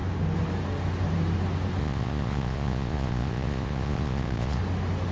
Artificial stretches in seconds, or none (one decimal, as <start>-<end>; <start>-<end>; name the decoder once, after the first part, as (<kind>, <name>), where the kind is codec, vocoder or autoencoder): 1.8-4.6 (vocoder, Vocos)